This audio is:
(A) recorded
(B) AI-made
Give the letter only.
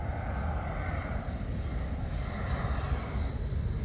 A